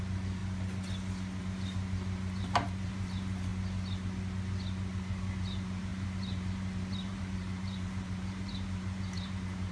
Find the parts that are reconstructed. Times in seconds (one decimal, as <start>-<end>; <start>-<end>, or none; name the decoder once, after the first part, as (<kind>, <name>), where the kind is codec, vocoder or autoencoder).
0.0-0.4 (vocoder, BigVGAN v2); 1.4-3.5; 5.0-9.7